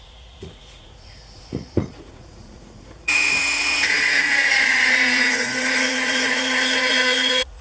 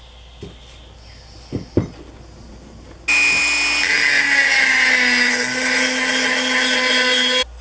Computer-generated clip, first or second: first